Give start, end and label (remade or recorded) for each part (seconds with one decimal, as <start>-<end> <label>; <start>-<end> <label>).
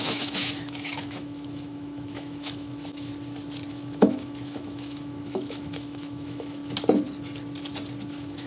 0.0-3.1 remade; 3.1-3.7 recorded; 3.7-6.6 remade; 6.6-8.1 recorded; 8.1-8.5 remade